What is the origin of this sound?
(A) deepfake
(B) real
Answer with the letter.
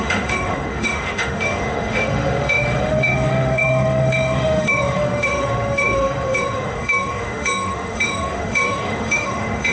A